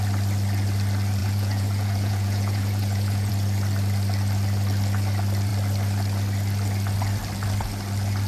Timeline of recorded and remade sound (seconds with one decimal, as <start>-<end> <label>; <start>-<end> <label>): 0.0-1.2 recorded; 1.2-3.3 remade; 3.3-8.3 recorded